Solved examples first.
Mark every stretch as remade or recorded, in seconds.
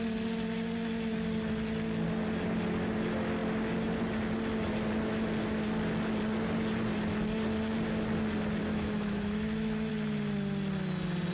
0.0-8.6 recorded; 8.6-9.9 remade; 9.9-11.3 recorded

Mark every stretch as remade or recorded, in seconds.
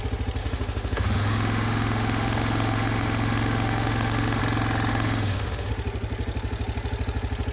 0.0-0.4 recorded; 0.4-4.4 remade; 4.4-4.9 recorded; 4.9-5.7 remade; 5.7-7.5 recorded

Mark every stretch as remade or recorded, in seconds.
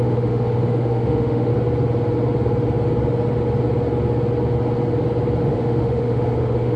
0.0-1.5 remade; 1.5-5.4 recorded; 5.4-6.8 remade